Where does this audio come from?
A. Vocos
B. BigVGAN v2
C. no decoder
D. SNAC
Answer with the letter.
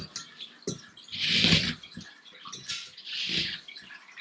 C